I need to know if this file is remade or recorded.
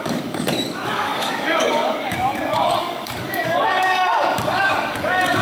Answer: remade